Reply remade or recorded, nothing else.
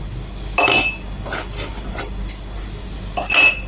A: recorded